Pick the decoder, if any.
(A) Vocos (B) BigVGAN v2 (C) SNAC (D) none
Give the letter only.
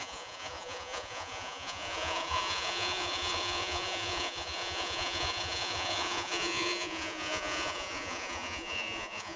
A